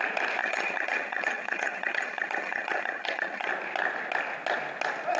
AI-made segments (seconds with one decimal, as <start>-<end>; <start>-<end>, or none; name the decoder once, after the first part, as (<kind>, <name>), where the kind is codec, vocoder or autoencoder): 0.4-3.5 (vocoder, HiFi-GAN)